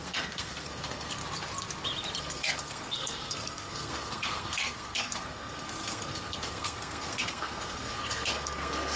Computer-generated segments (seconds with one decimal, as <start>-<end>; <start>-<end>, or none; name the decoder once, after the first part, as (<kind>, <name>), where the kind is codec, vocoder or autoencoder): 0.0-1.2 (codec, SNAC); 2.2-9.0